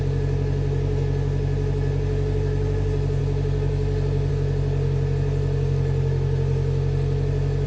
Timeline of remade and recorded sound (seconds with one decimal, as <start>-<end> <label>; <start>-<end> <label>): 0.0-7.7 recorded